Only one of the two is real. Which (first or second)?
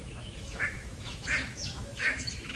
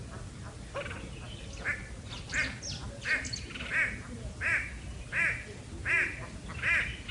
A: second